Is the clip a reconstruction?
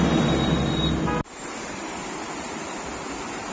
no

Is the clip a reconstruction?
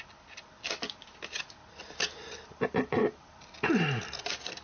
no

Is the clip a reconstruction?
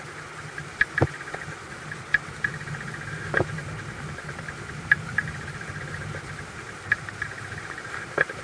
no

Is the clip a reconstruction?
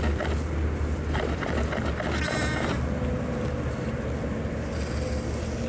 no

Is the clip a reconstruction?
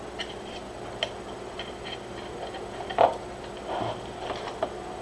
no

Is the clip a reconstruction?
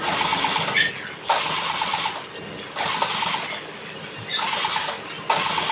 no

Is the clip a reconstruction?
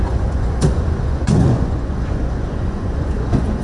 yes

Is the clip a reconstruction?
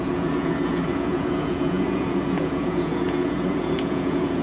yes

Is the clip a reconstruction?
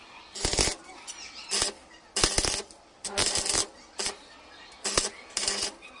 no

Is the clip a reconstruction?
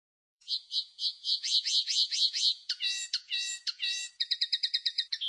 yes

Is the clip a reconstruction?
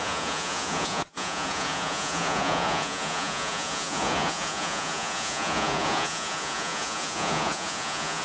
yes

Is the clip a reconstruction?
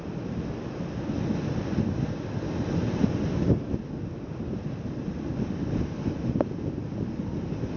no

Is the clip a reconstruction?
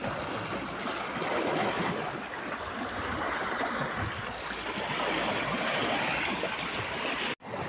no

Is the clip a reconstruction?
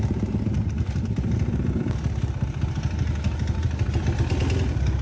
no